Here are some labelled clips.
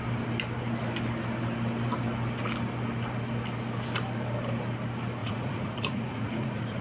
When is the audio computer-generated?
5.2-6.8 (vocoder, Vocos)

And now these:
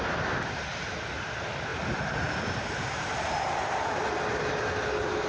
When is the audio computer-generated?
none

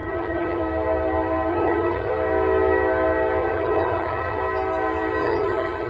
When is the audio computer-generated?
0.0-0.6 (vocoder, HiFi-GAN); 1.5-2.1; 3.4-4.4; 5.2-5.9

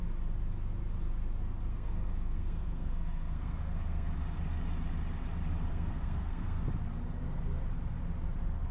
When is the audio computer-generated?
1.7-4.1 (codec, SNAC); 5.7-6.6

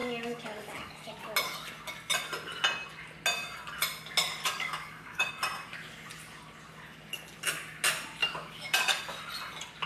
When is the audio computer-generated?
0.0-1.1 (codec, DAC); 4.4-5.3; 8.2-9.0

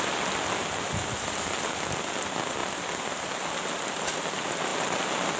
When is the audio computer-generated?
2.6-3.3 (vocoder, BigVGAN v2); 4.7-5.4